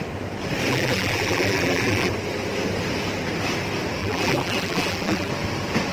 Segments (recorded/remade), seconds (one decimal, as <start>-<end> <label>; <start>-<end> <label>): 0.0-0.7 recorded; 0.7-2.1 remade; 2.1-4.0 recorded; 4.0-5.3 remade; 5.3-5.9 recorded